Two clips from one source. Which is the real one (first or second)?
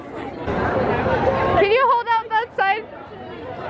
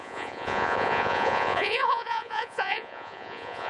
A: first